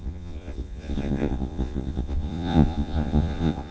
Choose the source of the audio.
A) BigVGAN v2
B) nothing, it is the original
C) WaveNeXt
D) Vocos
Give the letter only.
D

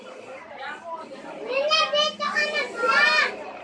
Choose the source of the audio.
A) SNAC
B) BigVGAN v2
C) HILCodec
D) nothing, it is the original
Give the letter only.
D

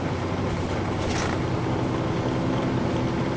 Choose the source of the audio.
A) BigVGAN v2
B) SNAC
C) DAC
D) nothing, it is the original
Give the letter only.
D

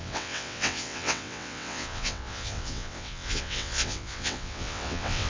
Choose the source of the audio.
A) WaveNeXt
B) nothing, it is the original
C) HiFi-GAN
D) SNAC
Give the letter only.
A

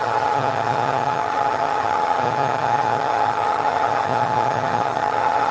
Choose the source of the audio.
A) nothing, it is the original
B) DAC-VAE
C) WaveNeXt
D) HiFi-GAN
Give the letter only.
D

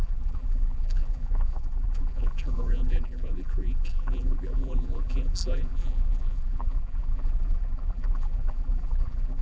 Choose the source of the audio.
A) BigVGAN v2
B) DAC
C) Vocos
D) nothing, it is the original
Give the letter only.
A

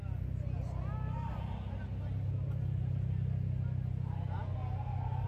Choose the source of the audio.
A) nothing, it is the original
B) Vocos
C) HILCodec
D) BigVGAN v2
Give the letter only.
A